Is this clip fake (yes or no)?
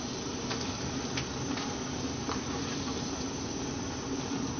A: yes